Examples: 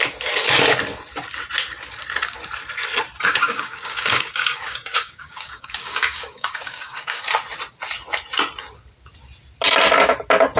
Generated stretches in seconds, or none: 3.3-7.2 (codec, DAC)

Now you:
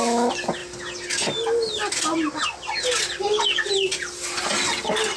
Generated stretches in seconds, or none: none

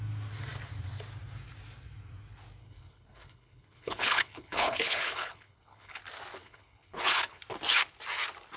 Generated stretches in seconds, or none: 2.6-6.0 (codec, HILCodec); 6.4-7.4

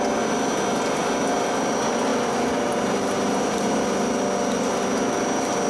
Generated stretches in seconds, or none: none